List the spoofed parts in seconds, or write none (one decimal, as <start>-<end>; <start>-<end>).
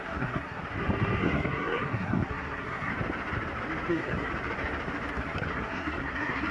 0.0-0.6; 1.2-2.9; 3.9-4.3; 5.1-6.5